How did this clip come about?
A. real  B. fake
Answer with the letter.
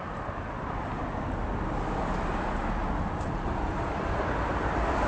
A